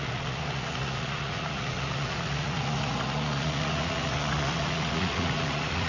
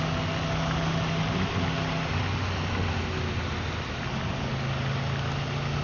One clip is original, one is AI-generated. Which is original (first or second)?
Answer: second